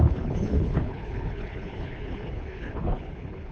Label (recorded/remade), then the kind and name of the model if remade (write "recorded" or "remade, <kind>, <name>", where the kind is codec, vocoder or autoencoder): remade, codec, HILCodec